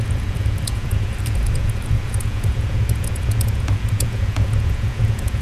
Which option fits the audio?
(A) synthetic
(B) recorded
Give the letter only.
A